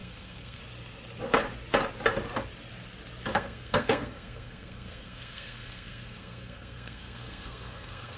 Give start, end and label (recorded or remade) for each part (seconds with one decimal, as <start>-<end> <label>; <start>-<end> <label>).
0.0-0.6 remade; 0.6-3.3 recorded; 3.3-8.2 remade